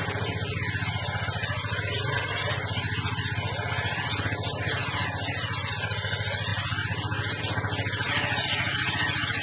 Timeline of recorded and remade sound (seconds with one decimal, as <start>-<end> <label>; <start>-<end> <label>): 0.0-9.4 recorded